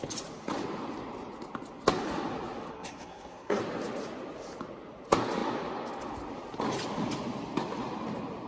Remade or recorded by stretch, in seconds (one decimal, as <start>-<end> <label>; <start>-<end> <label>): 0.0-2.7 recorded; 2.7-3.6 remade; 3.6-8.5 recorded